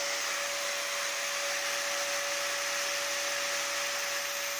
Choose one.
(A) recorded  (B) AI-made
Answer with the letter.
A